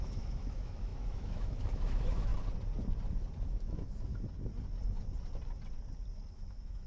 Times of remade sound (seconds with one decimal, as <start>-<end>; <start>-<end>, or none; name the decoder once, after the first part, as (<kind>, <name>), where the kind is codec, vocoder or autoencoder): 0.0-2.3 (autoencoder, DAC-VAE); 3.4-4.1; 6.3-6.9